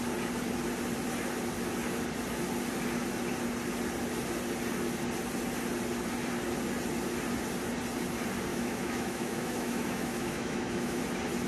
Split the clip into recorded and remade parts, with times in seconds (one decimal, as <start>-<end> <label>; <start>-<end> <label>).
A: 0.0-8.5 recorded; 8.5-11.0 remade; 11.0-11.5 recorded